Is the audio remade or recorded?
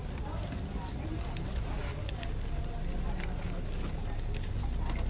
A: recorded